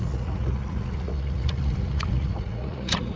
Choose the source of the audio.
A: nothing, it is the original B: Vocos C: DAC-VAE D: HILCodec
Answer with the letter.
B